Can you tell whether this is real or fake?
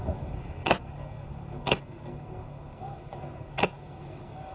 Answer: fake